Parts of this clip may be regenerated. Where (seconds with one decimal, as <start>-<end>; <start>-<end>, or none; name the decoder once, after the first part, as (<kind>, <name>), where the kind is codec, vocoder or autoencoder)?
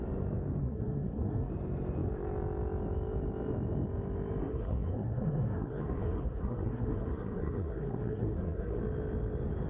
0.6-1.5 (codec, SNAC); 4.4-8.8